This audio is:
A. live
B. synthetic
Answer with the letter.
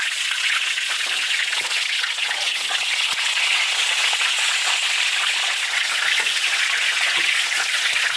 B